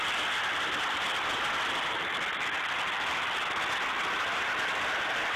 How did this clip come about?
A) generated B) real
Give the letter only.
B